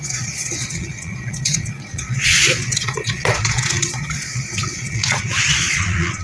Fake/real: fake